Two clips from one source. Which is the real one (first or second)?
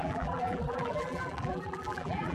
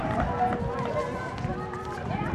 second